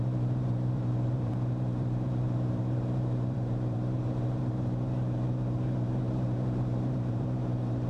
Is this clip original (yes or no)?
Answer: no